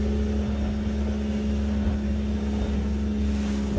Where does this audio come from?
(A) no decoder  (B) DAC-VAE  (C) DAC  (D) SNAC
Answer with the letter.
A